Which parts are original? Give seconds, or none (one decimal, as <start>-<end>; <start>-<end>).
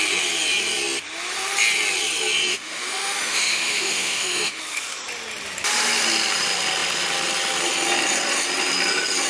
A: 0.0-2.5; 4.6-9.3